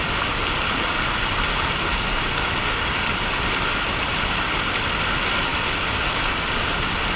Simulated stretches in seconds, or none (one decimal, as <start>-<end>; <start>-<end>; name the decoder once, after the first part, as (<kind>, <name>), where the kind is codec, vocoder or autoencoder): none